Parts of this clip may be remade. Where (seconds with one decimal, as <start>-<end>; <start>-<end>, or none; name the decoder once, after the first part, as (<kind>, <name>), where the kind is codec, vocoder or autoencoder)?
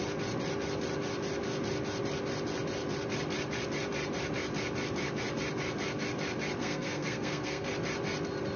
6.6-7.7 (codec, SNAC)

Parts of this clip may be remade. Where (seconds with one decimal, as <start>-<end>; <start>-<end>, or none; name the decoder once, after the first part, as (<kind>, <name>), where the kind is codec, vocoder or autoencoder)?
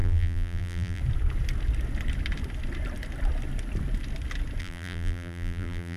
0.0-1.0 (vocoder, BigVGAN v2); 4.6-6.0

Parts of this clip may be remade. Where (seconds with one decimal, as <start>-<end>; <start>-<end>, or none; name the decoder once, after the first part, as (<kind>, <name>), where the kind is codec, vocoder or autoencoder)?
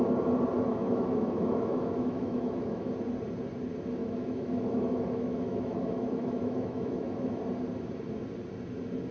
0.7-2.9 (autoencoder, DAC-VAE); 4.0-7.4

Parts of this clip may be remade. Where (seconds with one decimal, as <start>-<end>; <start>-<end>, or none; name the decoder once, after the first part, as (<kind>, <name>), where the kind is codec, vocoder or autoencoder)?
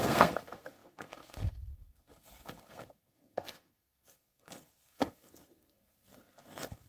0.0-6.9 (codec, SNAC)